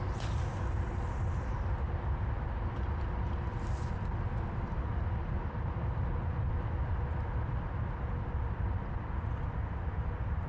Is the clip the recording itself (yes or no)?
no